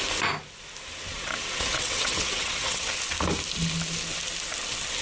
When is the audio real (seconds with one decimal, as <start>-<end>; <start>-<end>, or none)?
0.0-1.1; 2.8-5.0